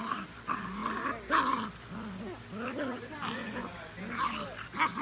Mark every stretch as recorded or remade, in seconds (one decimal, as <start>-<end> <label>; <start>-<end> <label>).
0.0-3.4 recorded; 3.4-3.9 remade; 3.9-5.0 recorded